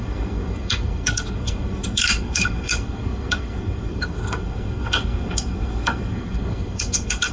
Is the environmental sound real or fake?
fake